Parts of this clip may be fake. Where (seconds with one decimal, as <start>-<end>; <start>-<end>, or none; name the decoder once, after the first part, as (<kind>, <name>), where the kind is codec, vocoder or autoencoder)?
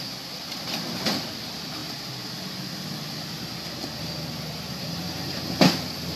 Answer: 0.0-1.8 (vocoder, BigVGAN v2); 4.8-6.2